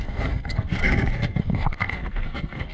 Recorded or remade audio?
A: remade